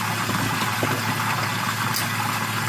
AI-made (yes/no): no